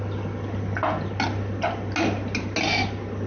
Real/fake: real